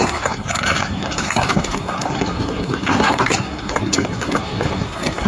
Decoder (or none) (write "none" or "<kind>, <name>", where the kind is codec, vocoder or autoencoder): codec, SNAC